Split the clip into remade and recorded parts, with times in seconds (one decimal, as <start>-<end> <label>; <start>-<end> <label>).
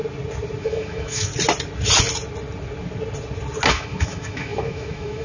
0.0-0.6 recorded; 0.6-1.3 remade; 1.3-3.7 recorded; 3.7-5.2 remade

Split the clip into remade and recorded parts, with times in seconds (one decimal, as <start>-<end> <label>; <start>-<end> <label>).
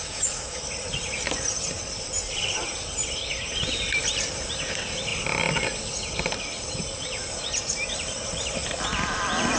0.0-0.6 remade; 0.6-9.6 recorded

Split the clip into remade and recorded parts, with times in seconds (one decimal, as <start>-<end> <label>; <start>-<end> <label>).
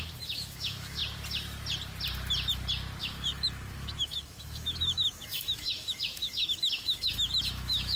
0.0-1.0 remade; 1.0-3.0 recorded; 3.0-8.0 remade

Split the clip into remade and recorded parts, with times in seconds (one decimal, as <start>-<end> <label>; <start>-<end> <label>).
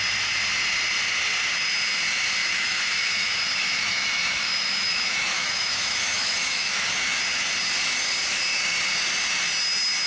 0.0-2.4 recorded; 2.4-7.2 remade; 7.2-10.1 recorded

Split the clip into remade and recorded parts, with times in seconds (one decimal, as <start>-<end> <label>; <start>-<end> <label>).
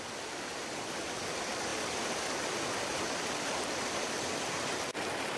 0.0-5.4 recorded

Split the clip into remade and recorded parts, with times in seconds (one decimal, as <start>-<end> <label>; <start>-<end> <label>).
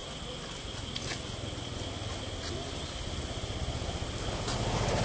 0.0-5.0 recorded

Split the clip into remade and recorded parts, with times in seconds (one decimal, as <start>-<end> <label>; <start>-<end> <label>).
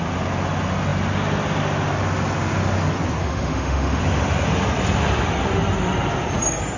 0.0-3.2 recorded; 3.2-4.0 remade; 4.0-6.8 recorded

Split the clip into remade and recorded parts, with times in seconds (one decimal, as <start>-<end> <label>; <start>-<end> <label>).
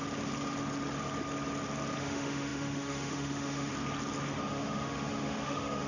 0.0-2.0 recorded; 2.0-3.7 remade; 3.7-4.5 recorded; 4.5-5.9 remade